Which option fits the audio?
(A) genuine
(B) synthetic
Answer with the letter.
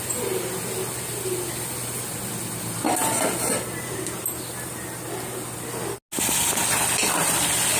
A